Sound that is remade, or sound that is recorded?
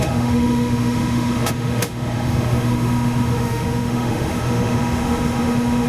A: remade